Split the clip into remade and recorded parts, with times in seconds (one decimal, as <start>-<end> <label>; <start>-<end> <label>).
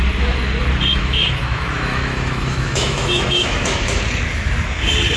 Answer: 0.0-0.9 recorded; 0.9-4.0 remade; 4.0-5.2 recorded